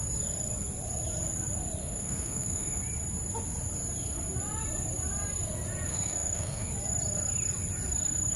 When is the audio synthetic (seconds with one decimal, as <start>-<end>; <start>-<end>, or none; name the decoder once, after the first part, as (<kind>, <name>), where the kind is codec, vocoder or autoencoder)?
1.8-2.8 (autoencoder, DAC-VAE); 5.9-6.7